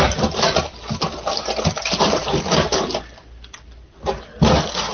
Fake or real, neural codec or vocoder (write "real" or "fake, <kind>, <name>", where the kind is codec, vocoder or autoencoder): real